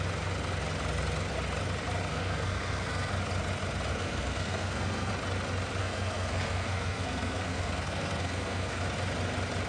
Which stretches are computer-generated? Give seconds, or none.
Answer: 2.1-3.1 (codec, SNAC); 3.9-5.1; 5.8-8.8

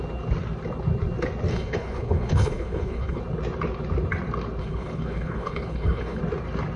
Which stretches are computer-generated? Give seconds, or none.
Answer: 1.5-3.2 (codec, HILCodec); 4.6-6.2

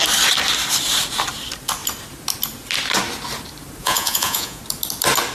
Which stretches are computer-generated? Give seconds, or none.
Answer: 3.8-4.6 (vocoder, Vocos)

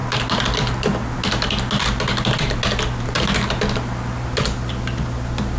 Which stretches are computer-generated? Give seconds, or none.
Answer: none

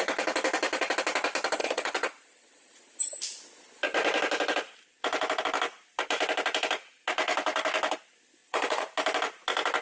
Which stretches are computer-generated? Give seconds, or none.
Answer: 1.6-3.0 (vocoder, Vocos); 8.4-8.9

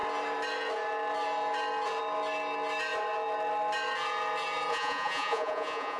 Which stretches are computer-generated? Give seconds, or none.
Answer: 4.7-6.0 (vocoder, Vocos)

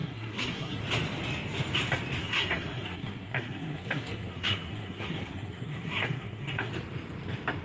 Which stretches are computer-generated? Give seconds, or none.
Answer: 0.0-0.8 (codec, SNAC); 2.2-6.7

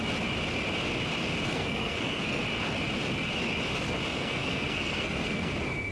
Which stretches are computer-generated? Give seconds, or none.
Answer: 1.5-2.4 (codec, SNAC); 4.1-5.5